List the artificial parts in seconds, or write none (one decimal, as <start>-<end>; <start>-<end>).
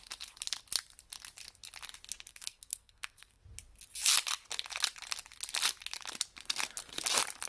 2.3-3.4